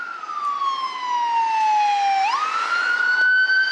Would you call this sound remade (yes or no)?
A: no